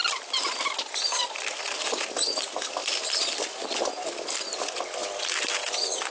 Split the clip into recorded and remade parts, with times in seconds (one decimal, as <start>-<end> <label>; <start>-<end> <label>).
0.0-6.1 recorded